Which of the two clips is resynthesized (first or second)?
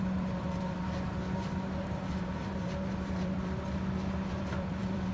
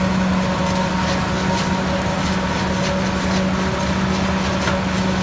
first